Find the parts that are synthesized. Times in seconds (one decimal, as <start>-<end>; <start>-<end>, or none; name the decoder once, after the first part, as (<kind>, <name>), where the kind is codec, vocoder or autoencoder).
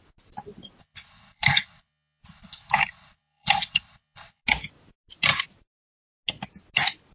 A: 0.8-4.4 (codec, HILCodec)